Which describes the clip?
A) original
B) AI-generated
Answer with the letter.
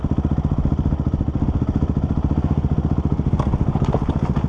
A